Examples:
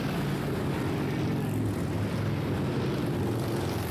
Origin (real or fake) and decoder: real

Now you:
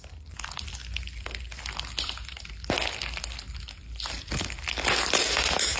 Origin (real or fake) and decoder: real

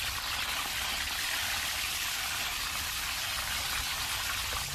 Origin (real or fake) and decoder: real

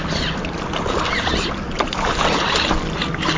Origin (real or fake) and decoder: real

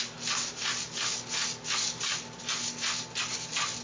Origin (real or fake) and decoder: real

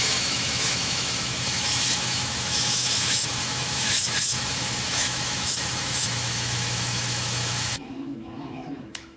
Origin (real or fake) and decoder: fake, autoencoder, DAC-VAE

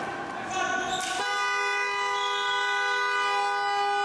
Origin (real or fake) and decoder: real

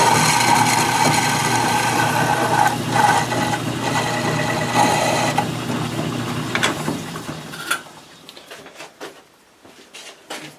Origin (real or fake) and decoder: real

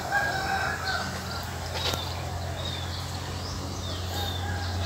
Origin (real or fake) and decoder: real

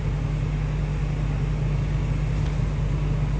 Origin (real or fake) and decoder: real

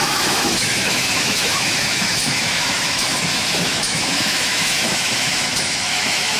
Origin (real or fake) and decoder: fake, autoencoder, DAC-VAE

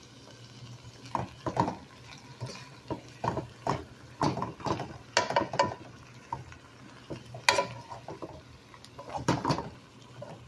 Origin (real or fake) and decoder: real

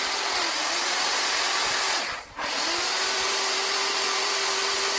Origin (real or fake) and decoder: real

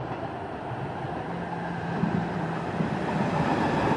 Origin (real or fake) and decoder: real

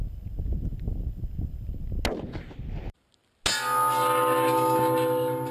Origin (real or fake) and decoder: real